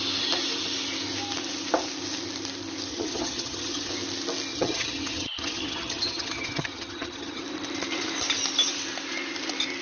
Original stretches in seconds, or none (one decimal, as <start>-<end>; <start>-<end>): 0.0-2.9; 3.9-4.5; 7.4-9.8